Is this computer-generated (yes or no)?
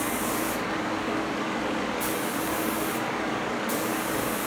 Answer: yes